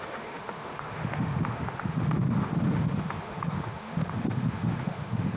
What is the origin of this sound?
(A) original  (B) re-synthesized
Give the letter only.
B